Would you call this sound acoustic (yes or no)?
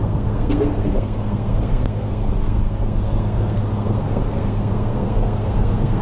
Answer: no